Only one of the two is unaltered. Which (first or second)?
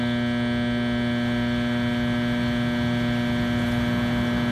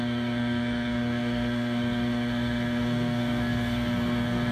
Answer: first